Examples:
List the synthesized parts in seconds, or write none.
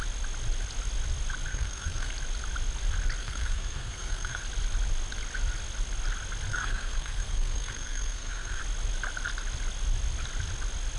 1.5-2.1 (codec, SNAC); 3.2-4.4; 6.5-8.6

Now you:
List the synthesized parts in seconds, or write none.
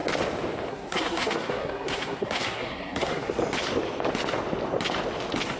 0.7-3.4 (codec, SNAC)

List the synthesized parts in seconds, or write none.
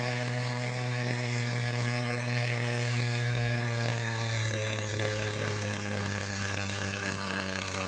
0.0-7.9 (codec, SNAC)